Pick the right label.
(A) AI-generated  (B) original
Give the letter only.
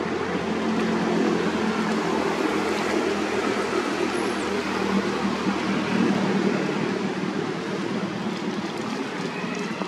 B